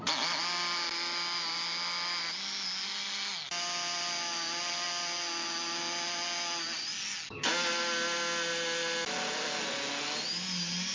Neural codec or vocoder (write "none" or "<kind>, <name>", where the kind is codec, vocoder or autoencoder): none